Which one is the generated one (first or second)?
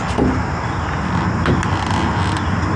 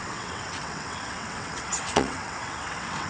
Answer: second